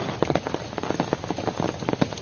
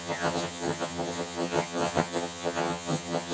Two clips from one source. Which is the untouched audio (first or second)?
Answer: first